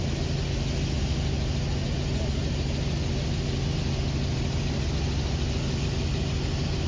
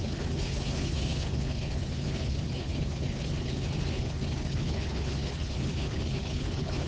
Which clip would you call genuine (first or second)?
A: first